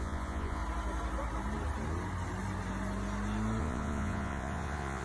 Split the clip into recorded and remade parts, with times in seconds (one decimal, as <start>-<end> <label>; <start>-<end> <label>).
0.0-0.6 remade; 0.6-3.6 recorded; 3.6-5.0 remade